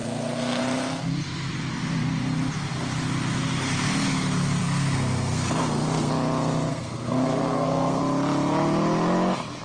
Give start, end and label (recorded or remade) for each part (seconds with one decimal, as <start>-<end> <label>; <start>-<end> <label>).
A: 0.0-0.6 remade; 0.6-4.6 recorded; 4.6-6.1 remade; 6.1-6.7 recorded; 6.7-8.0 remade; 8.0-9.6 recorded